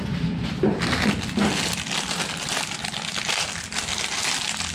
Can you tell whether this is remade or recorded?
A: recorded